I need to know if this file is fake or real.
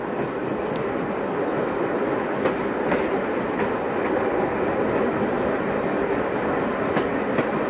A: real